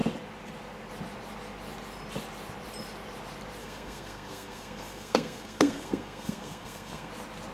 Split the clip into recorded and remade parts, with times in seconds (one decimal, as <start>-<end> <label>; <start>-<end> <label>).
0.0-3.6 recorded; 3.6-7.1 remade; 7.1-7.5 recorded